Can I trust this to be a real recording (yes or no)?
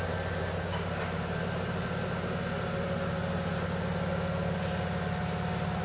yes